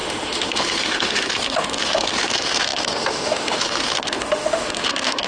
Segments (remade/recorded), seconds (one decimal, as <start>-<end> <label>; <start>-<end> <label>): 0.0-5.3 remade